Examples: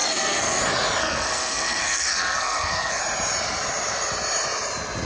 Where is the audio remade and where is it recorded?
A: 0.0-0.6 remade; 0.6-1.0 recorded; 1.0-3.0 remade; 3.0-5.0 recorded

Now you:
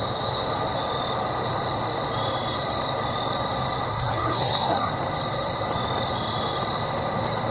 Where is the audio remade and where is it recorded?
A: 0.0-3.9 recorded; 3.9-4.9 remade; 4.9-7.5 recorded

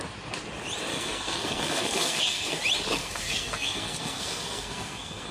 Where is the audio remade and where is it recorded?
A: 0.0-0.9 recorded; 0.9-2.6 remade; 2.6-3.0 recorded; 3.0-5.3 remade

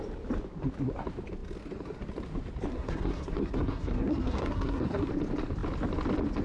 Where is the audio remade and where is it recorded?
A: 0.0-2.7 recorded; 2.7-5.1 remade; 5.1-6.4 recorded

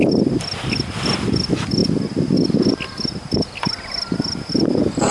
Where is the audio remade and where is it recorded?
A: 0.0-5.1 recorded